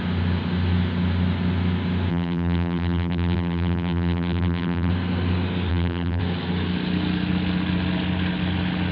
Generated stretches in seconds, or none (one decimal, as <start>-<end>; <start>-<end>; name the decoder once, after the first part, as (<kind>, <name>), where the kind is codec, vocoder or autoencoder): 2.1-4.9 (vocoder, BigVGAN v2); 5.7-6.2